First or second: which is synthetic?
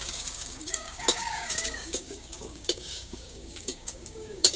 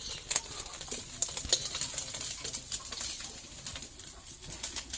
first